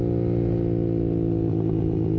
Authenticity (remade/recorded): recorded